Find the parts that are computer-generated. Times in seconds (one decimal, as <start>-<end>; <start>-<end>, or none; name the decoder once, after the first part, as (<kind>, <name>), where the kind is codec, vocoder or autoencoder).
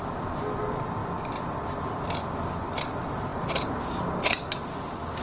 none